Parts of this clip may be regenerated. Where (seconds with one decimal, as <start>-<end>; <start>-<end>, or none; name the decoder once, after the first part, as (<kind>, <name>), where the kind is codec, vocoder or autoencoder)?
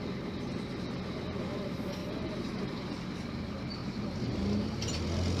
2.0-2.9 (vocoder, BigVGAN v2)